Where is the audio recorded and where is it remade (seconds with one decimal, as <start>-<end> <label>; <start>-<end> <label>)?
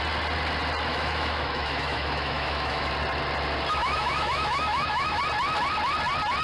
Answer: 0.0-0.9 recorded; 0.9-2.9 remade; 2.9-3.8 recorded; 3.8-5.2 remade; 5.2-6.4 recorded